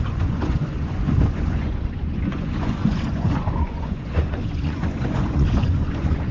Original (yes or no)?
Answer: no